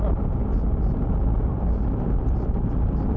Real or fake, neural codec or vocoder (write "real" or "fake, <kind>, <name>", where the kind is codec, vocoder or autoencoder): real